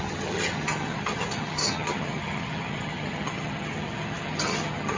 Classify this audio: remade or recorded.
remade